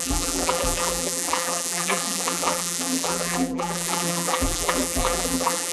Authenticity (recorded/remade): remade